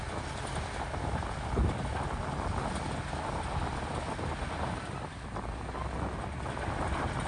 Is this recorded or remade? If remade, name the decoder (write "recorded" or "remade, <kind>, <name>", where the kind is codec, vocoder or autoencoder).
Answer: recorded